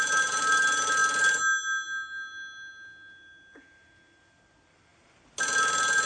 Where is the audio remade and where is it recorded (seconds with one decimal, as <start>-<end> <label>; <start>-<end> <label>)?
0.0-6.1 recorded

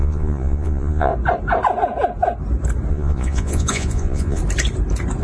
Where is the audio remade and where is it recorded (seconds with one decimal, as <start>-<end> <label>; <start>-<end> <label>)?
0.0-1.1 remade; 1.1-2.9 recorded; 2.9-4.4 remade; 4.4-5.2 recorded

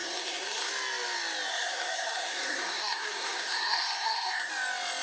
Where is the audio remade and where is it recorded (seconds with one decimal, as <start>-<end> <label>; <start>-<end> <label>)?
0.0-0.7 remade; 0.7-1.5 recorded; 1.5-4.5 remade; 4.5-5.0 recorded

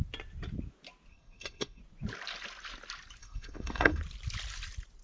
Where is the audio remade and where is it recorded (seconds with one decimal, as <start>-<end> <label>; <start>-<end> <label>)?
0.0-1.1 recorded; 1.1-1.8 remade; 1.8-3.2 recorded; 3.2-4.0 remade; 4.0-5.0 recorded

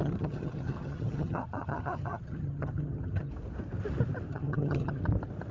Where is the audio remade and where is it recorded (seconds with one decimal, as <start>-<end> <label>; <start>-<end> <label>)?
0.0-3.3 remade; 3.3-4.3 recorded; 4.3-5.0 remade; 5.0-5.5 recorded

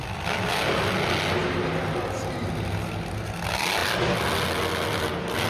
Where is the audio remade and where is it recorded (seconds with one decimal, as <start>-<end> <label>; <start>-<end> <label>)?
0.0-0.7 remade; 0.7-5.5 recorded

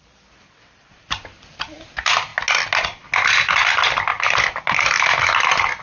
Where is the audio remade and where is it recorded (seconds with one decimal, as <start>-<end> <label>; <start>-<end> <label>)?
0.0-5.8 recorded

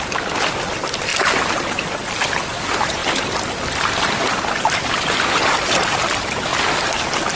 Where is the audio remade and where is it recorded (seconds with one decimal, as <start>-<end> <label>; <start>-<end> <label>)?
0.0-1.1 remade; 1.1-1.7 recorded; 1.7-3.0 remade; 3.0-3.5 recorded; 3.5-6.5 remade; 6.5-7.4 recorded